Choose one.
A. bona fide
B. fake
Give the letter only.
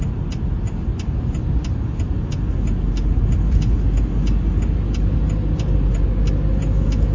A